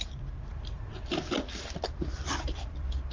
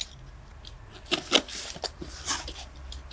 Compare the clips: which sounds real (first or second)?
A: second